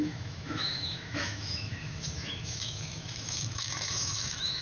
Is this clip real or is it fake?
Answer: fake